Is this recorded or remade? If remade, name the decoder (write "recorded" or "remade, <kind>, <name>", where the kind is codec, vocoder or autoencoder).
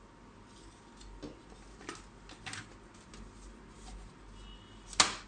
recorded